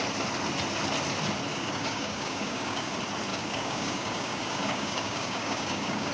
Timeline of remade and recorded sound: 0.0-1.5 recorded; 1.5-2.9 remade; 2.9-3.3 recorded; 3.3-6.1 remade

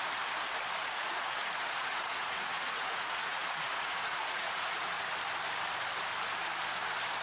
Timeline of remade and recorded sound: 0.0-0.8 recorded; 0.8-5.1 remade; 5.1-7.2 recorded

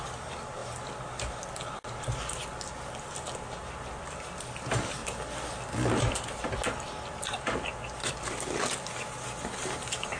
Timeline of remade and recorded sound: 0.0-10.2 recorded

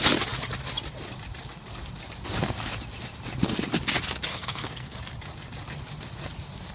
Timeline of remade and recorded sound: 0.0-4.3 recorded; 4.3-5.0 remade; 5.0-6.7 recorded

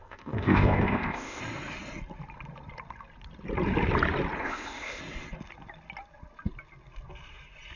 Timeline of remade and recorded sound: 0.0-1.4 remade; 1.4-4.4 recorded; 4.4-5.0 remade; 5.0-7.8 recorded

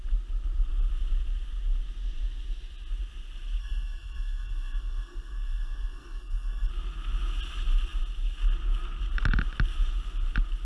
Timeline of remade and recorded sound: 0.0-3.6 recorded; 3.6-6.7 remade; 6.7-10.7 recorded

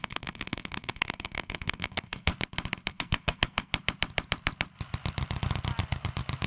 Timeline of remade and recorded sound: 0.0-2.3 remade; 2.3-2.9 recorded; 2.9-3.7 remade; 3.7-6.5 recorded